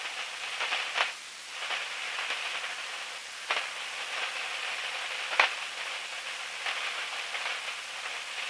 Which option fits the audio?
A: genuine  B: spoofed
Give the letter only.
A